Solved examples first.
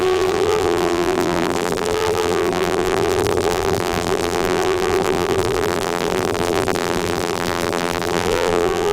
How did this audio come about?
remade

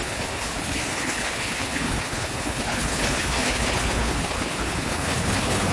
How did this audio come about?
remade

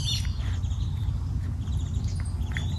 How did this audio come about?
recorded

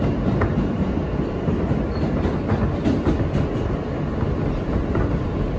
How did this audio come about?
recorded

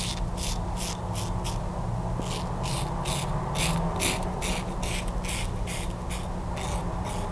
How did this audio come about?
recorded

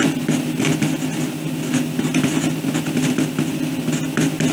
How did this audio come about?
recorded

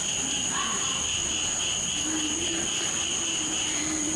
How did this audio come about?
recorded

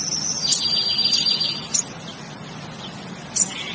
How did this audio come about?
recorded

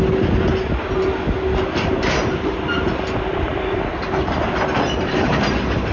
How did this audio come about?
recorded